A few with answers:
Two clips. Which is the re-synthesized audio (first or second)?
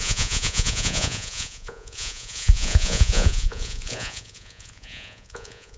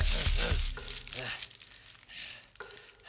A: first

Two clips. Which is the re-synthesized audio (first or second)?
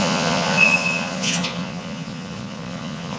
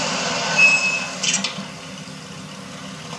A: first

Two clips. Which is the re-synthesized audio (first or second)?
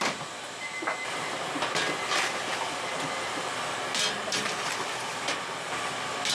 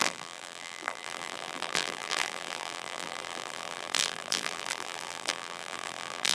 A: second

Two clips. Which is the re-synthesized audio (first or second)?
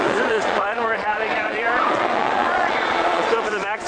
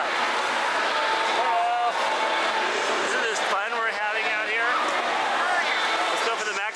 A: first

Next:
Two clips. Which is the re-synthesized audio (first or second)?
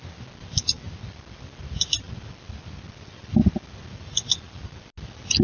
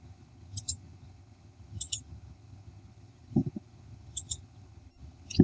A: second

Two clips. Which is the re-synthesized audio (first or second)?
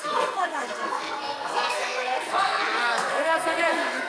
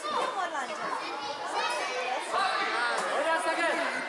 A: first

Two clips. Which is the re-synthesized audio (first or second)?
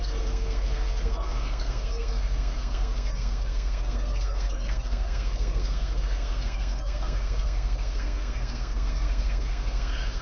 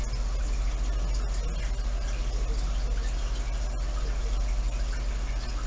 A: first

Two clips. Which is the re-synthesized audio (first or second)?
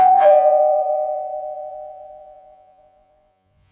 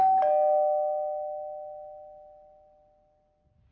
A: first